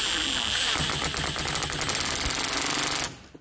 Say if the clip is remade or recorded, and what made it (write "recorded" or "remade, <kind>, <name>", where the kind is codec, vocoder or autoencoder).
recorded